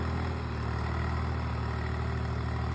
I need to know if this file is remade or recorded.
recorded